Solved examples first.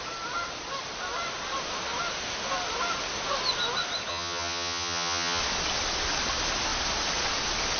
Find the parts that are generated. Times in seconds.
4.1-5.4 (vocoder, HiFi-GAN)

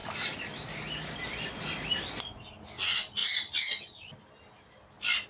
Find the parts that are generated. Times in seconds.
none

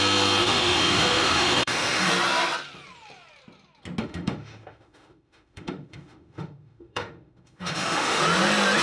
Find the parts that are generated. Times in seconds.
0.4-2.1 (autoencoder, DAC-VAE); 4.0-8.2

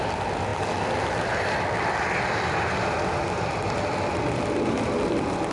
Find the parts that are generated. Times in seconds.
none

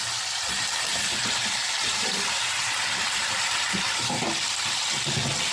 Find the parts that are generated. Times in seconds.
1.2-4.2 (vocoder, BigVGAN v2)

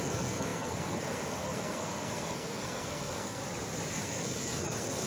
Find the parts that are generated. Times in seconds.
0.0-3.4 (codec, SNAC); 3.9-5.1

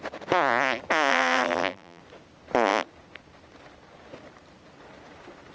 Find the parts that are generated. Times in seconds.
1.1-2.0 (vocoder, BigVGAN v2)